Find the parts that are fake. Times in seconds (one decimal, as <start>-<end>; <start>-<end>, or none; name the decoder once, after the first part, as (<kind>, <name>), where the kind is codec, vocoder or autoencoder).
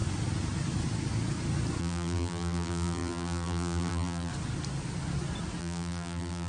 1.8-4.3 (vocoder, BigVGAN v2); 5.6-6.5